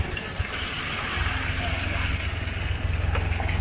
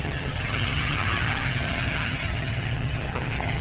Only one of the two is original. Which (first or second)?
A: first